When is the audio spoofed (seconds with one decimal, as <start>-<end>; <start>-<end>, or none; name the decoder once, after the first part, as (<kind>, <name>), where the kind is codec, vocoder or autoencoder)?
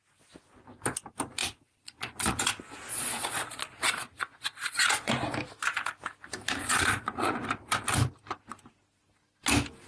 1.4-2.5 (vocoder, Vocos); 2.9-5.1; 6.6-7.4